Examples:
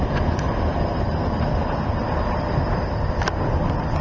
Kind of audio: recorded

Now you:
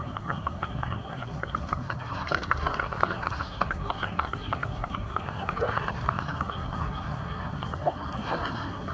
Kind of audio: remade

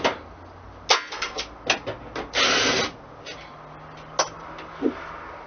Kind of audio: recorded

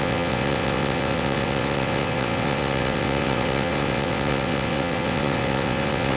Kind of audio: remade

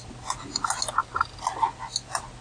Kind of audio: recorded